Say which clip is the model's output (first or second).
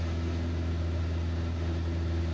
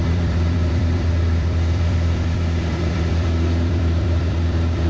second